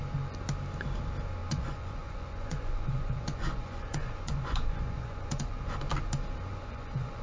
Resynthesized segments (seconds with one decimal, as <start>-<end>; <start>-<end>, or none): 1.4-5.7; 6.5-7.2